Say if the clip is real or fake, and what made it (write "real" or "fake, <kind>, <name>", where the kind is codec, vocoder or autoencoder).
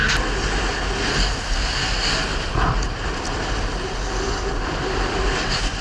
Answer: real